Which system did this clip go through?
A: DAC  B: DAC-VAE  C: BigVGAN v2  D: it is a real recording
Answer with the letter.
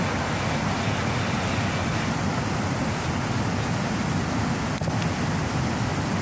D